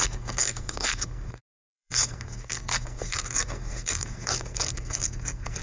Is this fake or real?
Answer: fake